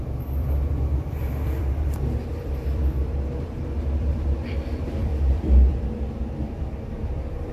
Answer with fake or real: fake